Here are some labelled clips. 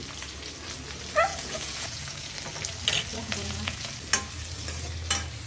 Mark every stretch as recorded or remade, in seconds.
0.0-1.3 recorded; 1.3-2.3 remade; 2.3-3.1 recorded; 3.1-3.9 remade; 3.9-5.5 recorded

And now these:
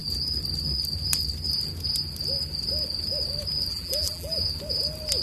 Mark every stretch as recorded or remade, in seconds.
0.0-3.7 recorded; 3.7-4.4 remade; 4.4-5.2 recorded

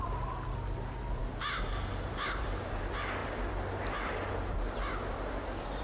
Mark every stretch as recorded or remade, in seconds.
0.0-5.8 recorded

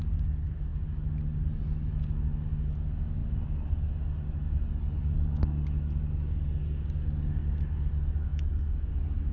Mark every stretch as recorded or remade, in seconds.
0.0-9.3 recorded

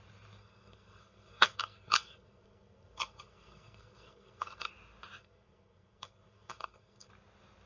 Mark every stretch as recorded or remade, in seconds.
0.0-0.4 recorded; 0.4-4.7 remade; 4.7-5.2 recorded; 5.2-7.1 remade; 7.1-7.7 recorded